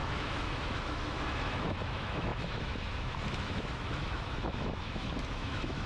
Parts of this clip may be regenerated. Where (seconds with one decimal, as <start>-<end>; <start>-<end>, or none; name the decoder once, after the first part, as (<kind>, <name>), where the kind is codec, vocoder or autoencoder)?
0.0-5.9 (autoencoder, DAC-VAE)